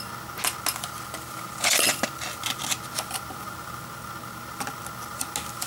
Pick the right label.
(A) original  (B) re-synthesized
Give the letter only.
A